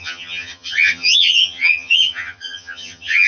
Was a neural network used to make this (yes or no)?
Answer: yes